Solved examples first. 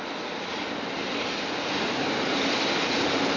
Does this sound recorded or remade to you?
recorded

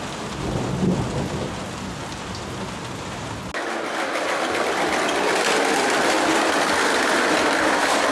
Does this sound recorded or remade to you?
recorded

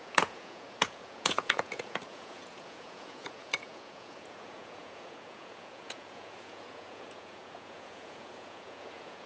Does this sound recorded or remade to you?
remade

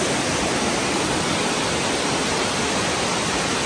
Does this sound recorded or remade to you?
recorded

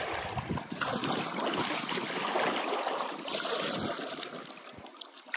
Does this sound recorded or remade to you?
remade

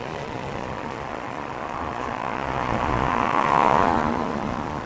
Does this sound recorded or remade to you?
remade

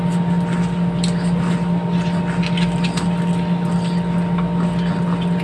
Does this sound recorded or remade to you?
recorded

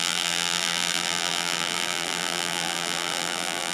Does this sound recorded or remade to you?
remade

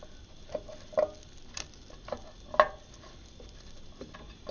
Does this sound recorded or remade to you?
recorded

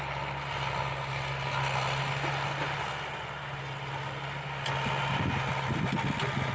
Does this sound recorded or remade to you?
recorded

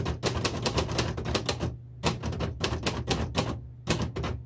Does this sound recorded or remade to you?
recorded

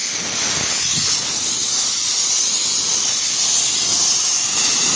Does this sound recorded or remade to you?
recorded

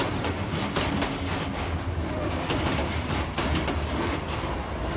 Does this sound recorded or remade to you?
recorded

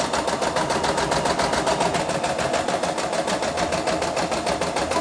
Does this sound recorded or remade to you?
recorded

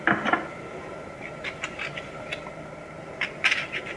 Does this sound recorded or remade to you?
recorded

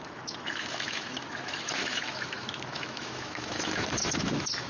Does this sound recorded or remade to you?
remade